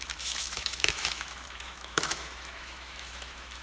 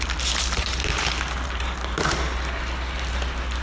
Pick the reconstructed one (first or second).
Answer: first